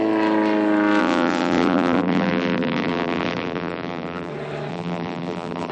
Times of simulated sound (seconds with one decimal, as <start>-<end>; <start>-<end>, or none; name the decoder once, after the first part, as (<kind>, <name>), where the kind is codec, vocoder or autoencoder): 1.0-4.3 (vocoder, BigVGAN v2); 4.7-5.7